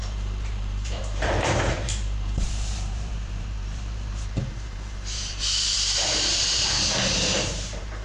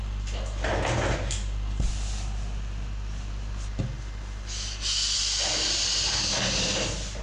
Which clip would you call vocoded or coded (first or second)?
first